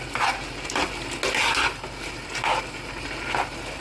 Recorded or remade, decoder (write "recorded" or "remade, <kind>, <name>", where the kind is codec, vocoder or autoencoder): recorded